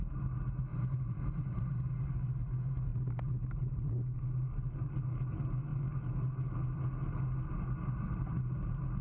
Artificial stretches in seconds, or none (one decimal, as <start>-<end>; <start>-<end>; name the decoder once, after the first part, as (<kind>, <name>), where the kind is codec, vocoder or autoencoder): 0.7-1.7 (vocoder, BigVGAN v2)